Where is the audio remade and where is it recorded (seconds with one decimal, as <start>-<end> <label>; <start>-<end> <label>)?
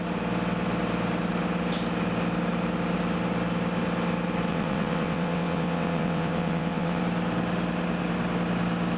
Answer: 0.0-4.5 recorded; 4.5-7.0 remade; 7.0-9.0 recorded